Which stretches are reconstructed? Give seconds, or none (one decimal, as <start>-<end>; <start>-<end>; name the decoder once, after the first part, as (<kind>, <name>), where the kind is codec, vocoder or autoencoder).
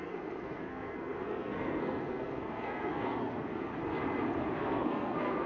0.0-3.7 (codec, SNAC); 4.6-5.5